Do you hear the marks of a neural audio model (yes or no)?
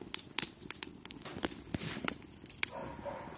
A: no